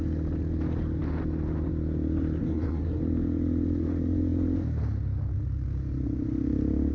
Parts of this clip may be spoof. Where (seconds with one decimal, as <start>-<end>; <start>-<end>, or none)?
2.4-3.0